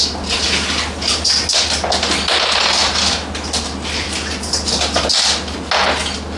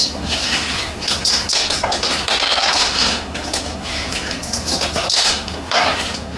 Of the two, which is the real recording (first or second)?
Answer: first